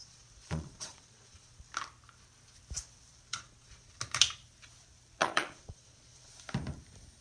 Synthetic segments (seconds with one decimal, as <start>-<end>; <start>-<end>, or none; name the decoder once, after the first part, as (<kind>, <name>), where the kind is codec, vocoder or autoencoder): 0.0-1.6 (vocoder, Vocos); 3.3-3.9; 5.2-6.3